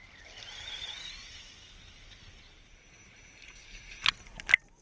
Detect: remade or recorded recorded